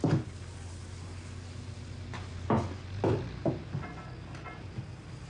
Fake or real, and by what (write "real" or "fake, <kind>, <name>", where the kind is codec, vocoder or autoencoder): real